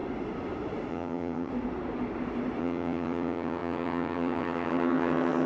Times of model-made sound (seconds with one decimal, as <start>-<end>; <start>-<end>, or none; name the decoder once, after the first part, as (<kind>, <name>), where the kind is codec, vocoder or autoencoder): 0.9-1.5 (vocoder, HiFi-GAN); 2.6-5.5